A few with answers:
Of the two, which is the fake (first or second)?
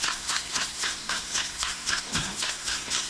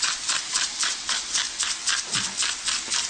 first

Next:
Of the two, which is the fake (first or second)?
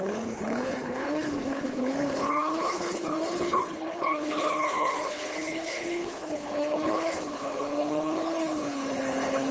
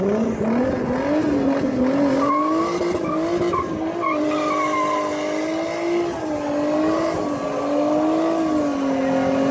first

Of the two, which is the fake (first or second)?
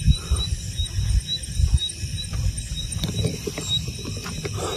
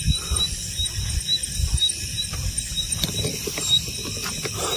second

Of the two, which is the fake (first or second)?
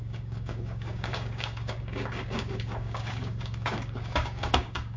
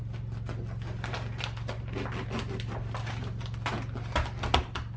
first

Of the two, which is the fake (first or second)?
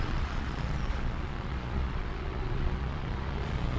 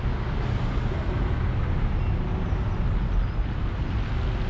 first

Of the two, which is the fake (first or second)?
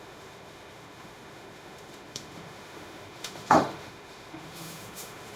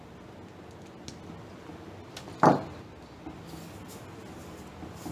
first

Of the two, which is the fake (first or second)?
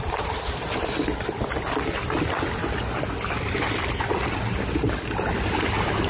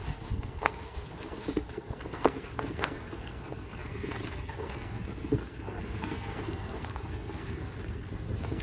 second